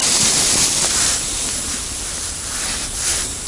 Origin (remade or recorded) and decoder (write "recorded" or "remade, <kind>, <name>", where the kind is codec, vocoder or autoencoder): recorded